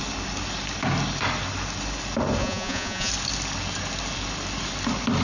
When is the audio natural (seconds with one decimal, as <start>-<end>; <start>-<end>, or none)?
0.0-2.4; 3.1-5.2